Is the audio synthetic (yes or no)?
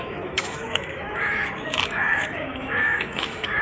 yes